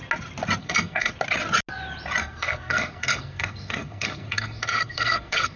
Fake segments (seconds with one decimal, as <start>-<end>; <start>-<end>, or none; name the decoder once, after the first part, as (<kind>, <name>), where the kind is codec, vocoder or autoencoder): 0.6-1.1 (codec, SNAC); 2.2-5.6